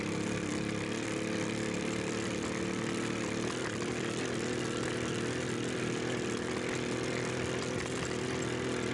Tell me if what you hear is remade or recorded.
recorded